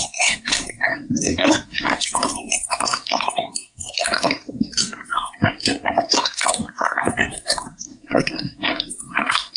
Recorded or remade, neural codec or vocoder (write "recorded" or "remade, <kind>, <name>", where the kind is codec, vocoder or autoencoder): remade, codec, SNAC